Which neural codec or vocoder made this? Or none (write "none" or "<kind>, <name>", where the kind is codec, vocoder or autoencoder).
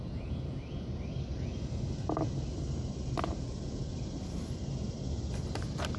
none